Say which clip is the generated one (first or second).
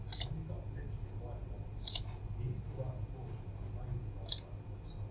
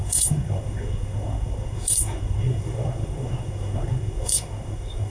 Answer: second